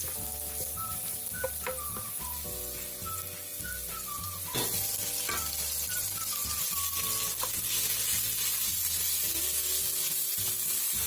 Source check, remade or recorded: recorded